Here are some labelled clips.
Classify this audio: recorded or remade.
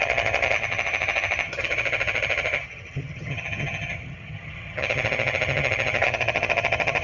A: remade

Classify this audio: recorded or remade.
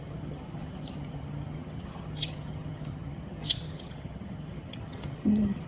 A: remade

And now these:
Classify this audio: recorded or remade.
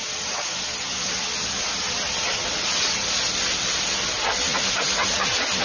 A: recorded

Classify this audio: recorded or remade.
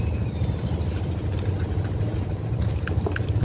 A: recorded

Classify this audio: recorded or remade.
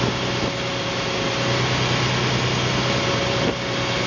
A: recorded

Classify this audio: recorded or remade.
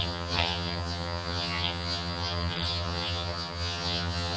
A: remade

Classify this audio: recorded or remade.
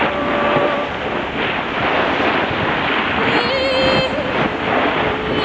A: recorded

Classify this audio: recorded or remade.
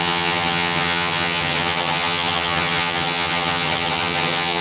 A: remade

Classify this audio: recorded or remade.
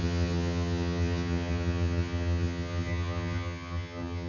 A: remade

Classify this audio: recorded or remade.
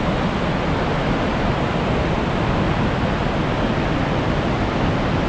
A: recorded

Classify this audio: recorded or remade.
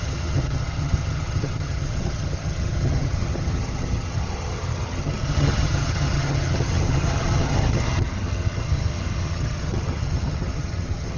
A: remade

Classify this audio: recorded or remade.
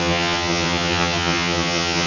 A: remade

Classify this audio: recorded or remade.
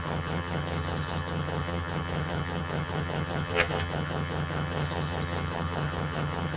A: remade